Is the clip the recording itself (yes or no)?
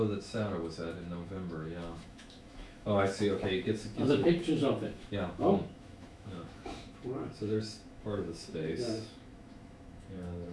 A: no